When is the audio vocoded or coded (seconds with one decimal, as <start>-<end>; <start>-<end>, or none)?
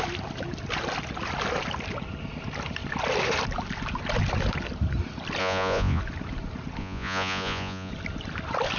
5.4-6.0; 6.8-7.9